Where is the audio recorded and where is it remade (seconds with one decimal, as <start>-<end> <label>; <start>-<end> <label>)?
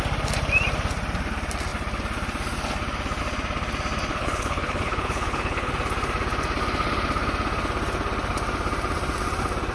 0.0-4.1 recorded; 4.1-5.7 remade; 5.7-9.7 recorded